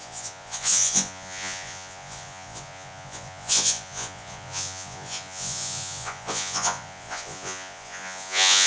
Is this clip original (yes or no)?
no